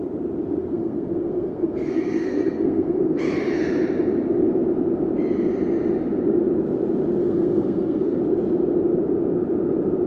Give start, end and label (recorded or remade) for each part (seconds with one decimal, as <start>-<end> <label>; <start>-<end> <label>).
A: 0.0-0.6 recorded; 0.6-3.2 remade; 3.2-7.2 recorded; 7.2-8.2 remade; 8.2-10.1 recorded